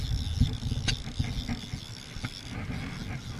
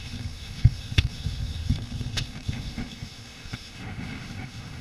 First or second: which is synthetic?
second